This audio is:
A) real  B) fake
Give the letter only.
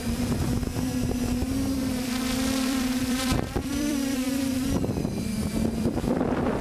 B